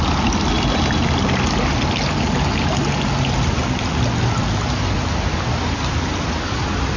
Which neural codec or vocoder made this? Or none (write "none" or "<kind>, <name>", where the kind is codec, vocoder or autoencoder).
none